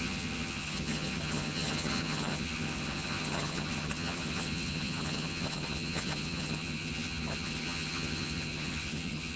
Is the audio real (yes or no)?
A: no